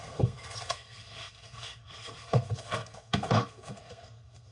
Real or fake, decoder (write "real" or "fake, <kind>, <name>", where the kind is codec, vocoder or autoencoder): fake, codec, SNAC